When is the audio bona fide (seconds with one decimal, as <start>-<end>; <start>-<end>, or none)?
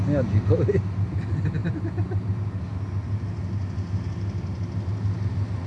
0.0-5.7